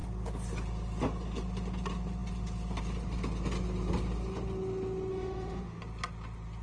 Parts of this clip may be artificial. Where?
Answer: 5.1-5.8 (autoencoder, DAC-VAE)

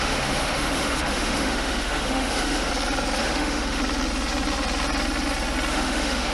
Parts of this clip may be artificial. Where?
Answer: 0.0-2.7 (autoencoder, DAC-VAE); 3.2-3.8; 5.7-6.3

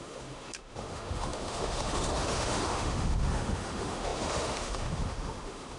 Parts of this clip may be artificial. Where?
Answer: 0.0-5.8 (autoencoder, DAC-VAE)

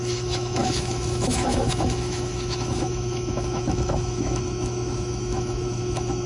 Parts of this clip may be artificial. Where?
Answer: 0.0-6.3 (autoencoder, DAC-VAE)

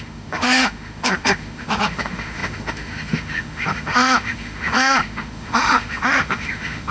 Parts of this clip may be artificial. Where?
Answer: 0.0-6.9 (autoencoder, DAC-VAE)

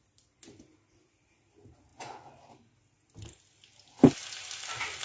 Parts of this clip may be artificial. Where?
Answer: none